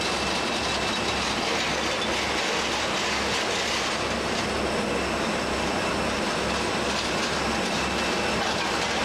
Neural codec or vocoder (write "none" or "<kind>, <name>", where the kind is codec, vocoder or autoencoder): none